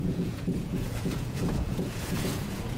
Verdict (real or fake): fake